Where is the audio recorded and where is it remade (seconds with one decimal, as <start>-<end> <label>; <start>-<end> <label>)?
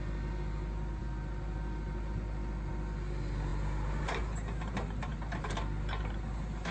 0.0-1.0 recorded; 1.0-2.7 remade; 2.7-6.7 recorded